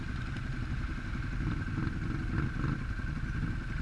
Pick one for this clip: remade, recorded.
recorded